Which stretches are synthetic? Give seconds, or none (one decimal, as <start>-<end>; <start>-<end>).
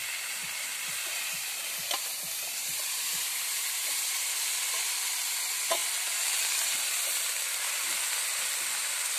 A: 0.4-4.4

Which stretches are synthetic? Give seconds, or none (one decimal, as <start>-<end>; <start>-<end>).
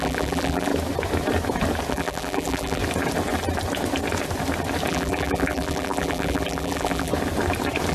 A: 0.0-0.7; 1.9-2.8; 4.9-7.1